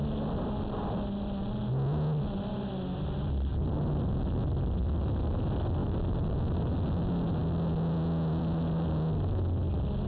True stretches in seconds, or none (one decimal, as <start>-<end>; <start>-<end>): 0.0-10.1